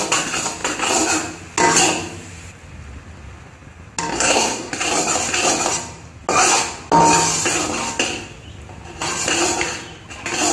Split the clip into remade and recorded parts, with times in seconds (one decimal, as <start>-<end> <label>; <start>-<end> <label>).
0.0-4.1 recorded; 4.1-4.7 remade; 4.7-10.5 recorded